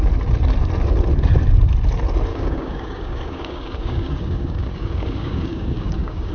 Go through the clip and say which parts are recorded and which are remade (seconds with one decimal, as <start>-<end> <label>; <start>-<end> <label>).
0.0-2.3 recorded; 2.3-6.3 remade